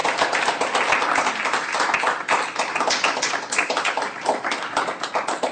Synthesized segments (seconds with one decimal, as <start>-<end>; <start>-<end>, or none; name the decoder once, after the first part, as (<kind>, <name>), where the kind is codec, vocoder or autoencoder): none